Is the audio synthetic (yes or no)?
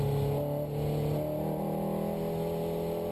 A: no